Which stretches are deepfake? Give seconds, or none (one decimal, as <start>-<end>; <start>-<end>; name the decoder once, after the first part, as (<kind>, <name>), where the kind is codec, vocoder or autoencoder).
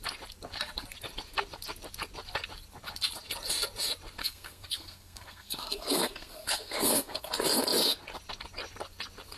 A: 4.2-7.3 (codec, SNAC)